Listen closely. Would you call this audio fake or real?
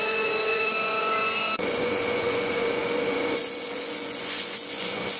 fake